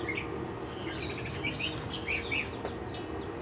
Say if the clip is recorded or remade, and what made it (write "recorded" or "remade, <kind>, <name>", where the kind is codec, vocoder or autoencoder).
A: recorded